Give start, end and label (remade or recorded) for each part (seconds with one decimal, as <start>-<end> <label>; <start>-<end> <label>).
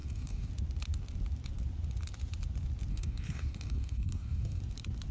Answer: 0.0-0.5 remade; 0.5-2.9 recorded; 2.9-4.6 remade; 4.6-5.1 recorded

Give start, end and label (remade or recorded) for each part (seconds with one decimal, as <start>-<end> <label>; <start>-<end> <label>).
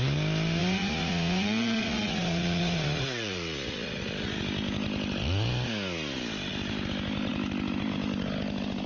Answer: 0.0-0.6 recorded; 0.6-4.4 remade; 4.4-8.9 recorded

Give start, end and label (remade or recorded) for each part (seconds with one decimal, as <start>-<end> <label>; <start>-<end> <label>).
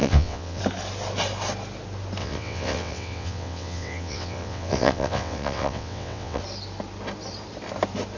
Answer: 0.0-0.6 remade; 0.6-2.2 recorded; 2.2-6.4 remade; 6.4-8.2 recorded